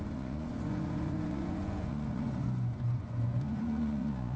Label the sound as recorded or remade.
remade